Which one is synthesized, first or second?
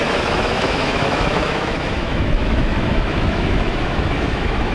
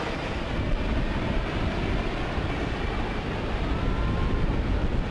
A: first